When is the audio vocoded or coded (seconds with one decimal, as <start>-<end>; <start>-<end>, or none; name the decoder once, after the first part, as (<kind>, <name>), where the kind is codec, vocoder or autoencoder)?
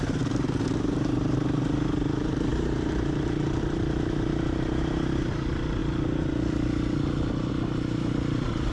0.0-5.8 (vocoder, BigVGAN v2); 7.5-8.7